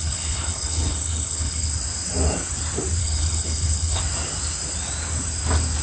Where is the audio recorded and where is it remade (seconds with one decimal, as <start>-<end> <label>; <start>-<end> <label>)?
0.0-1.7 remade; 1.7-3.0 recorded; 3.0-4.0 remade; 4.0-5.8 recorded